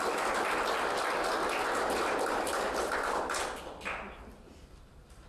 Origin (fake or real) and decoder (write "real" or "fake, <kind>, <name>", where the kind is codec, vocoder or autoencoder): real